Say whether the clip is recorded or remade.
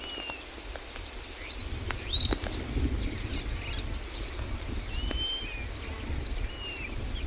recorded